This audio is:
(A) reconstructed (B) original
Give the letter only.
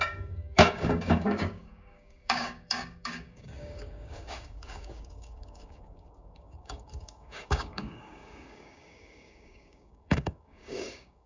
A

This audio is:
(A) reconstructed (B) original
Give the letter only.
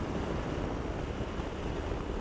B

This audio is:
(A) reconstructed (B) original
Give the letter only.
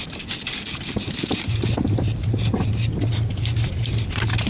B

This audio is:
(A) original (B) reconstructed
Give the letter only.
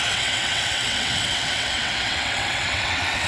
B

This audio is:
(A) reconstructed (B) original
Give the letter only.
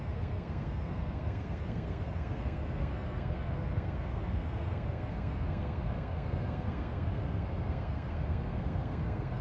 A